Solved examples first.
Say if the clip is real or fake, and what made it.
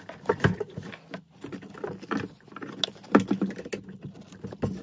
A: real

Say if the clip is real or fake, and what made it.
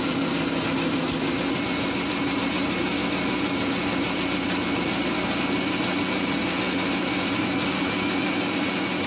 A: real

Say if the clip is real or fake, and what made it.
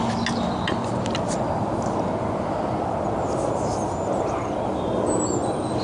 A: real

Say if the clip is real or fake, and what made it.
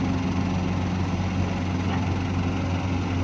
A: real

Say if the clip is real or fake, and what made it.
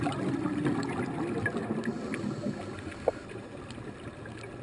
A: real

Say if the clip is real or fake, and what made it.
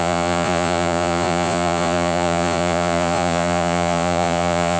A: fake, vocoder, Vocos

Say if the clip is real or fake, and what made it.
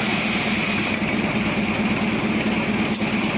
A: real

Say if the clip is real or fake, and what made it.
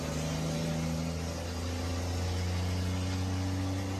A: real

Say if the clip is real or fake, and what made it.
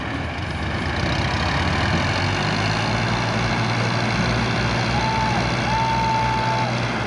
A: real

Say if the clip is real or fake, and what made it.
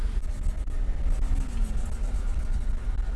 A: real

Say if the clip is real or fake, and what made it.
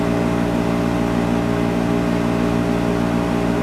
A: real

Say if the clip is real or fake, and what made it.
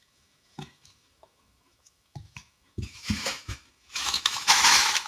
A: fake, autoencoder, DAC-VAE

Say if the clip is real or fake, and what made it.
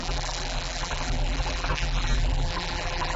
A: fake, vocoder, BigVGAN v2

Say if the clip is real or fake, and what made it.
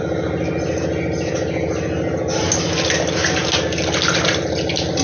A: real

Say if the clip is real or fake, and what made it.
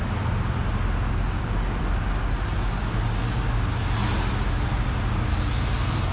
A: real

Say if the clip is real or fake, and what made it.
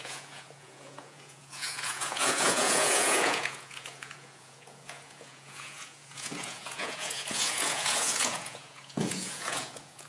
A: fake, vocoder, Vocos